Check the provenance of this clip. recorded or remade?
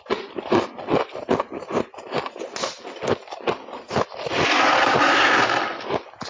recorded